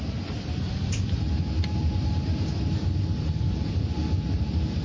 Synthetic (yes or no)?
yes